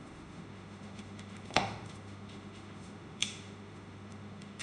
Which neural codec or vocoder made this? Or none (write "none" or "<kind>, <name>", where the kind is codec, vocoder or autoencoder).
autoencoder, DAC-VAE